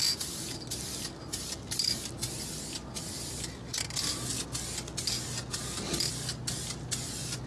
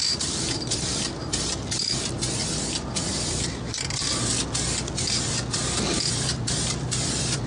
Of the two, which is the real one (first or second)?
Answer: first